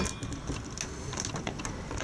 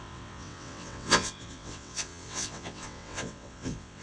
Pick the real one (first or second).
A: first